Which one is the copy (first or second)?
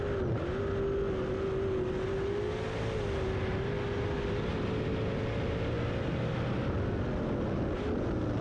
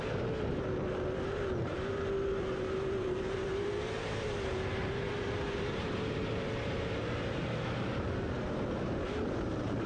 second